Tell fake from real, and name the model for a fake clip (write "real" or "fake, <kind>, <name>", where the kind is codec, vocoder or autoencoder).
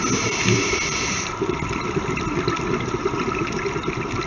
real